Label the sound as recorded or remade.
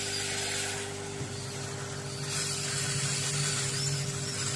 recorded